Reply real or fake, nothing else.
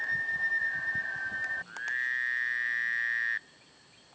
real